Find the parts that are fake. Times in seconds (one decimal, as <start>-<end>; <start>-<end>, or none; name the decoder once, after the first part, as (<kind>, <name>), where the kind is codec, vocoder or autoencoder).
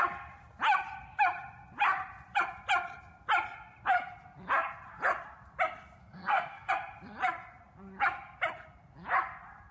6.0-6.7 (codec, SNAC)